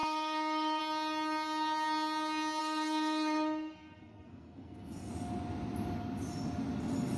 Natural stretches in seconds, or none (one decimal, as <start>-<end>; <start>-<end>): 0.8-2.6; 5.1-7.2